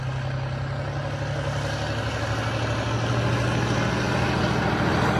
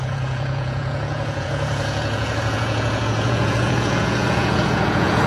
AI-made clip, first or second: second